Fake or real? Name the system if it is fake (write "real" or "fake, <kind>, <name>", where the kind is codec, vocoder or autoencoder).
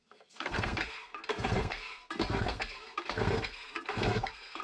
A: fake, codec, SNAC